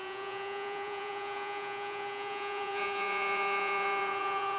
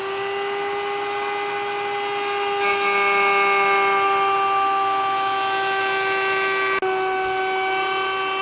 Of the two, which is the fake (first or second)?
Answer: first